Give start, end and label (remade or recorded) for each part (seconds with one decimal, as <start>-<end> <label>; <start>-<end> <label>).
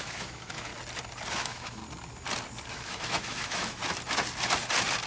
0.0-0.7 remade; 0.7-1.3 recorded; 1.3-1.8 remade; 1.8-2.7 recorded; 2.7-3.8 remade; 3.8-5.1 recorded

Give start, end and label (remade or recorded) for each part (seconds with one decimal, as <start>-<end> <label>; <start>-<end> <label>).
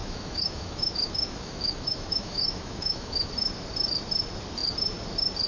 0.0-3.3 remade; 3.3-5.5 recorded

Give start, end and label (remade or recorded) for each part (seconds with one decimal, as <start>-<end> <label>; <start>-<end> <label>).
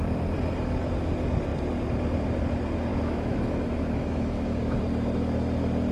0.0-2.9 recorded; 2.9-4.8 remade; 4.8-5.9 recorded